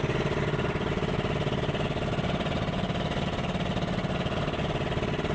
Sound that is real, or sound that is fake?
real